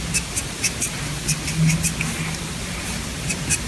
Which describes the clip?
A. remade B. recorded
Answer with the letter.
B